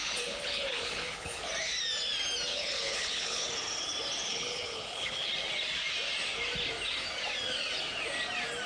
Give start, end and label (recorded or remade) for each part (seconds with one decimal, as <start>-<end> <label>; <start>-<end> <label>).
0.0-1.5 remade; 1.5-2.5 recorded; 2.5-3.5 remade; 3.5-4.3 recorded; 4.3-5.3 remade; 5.3-8.7 recorded